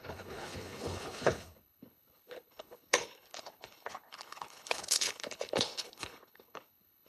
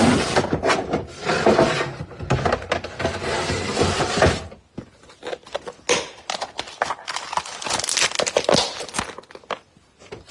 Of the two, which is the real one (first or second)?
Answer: second